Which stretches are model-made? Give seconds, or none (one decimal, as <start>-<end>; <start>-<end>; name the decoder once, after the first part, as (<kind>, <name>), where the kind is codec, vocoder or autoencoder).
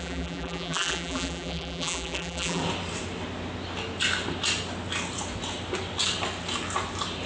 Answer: 0.0-2.6 (vocoder, BigVGAN v2)